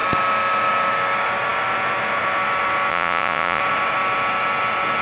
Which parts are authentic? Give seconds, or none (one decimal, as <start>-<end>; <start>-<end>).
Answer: 0.0-2.9; 3.6-5.0